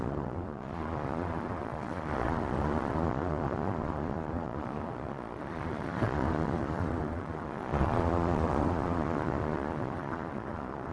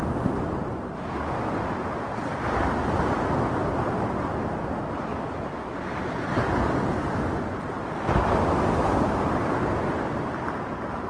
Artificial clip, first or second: first